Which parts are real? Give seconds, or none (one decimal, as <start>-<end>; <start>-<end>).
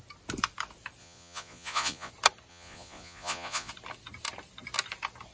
0.0-1.0; 2.1-2.5; 3.7-5.3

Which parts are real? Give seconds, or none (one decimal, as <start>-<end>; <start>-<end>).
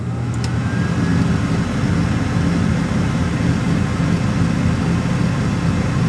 0.0-6.1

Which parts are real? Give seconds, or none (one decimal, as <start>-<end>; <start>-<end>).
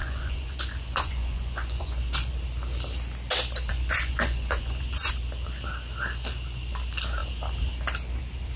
2.3-3.7; 5.1-8.6